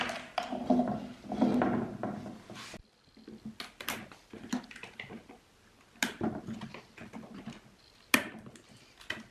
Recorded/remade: recorded